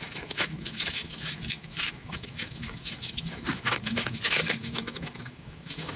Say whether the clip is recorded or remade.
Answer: remade